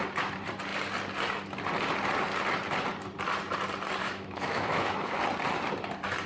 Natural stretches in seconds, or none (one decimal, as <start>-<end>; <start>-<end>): 0.0-4.0; 5.1-6.3